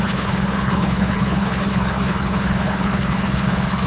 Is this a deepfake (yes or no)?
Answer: yes